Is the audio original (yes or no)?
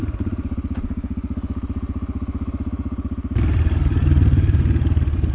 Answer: yes